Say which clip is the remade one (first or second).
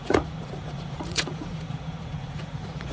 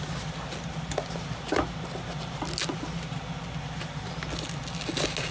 first